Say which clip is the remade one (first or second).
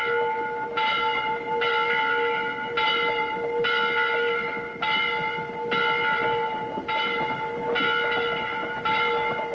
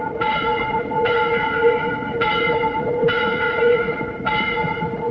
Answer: second